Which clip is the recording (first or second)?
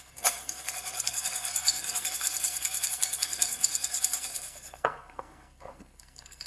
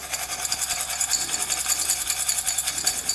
second